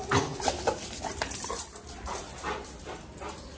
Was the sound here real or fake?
real